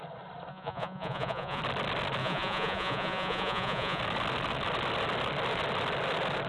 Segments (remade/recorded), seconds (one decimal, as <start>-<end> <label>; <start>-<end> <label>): 0.0-0.5 recorded; 0.5-1.6 remade; 1.6-2.2 recorded; 2.2-4.0 remade; 4.0-6.5 recorded